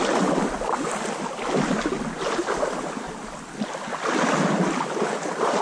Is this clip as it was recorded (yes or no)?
yes